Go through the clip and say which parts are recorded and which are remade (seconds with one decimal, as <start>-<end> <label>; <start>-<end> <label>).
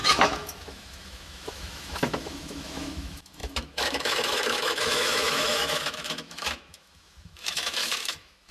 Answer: 0.0-8.5 remade